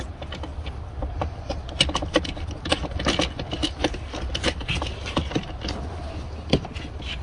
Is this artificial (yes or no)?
no